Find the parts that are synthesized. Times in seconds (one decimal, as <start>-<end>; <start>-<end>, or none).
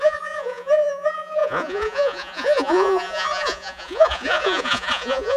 0.0-5.4